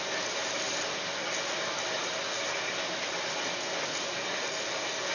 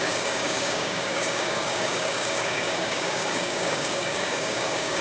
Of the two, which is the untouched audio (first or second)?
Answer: first